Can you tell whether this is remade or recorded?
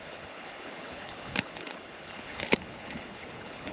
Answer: remade